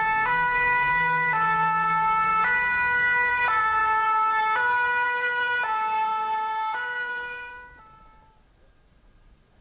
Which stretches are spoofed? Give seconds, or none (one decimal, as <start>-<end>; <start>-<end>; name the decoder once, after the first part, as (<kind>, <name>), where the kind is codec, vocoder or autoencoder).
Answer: 0.0-2.3 (vocoder, BigVGAN v2); 3.3-9.6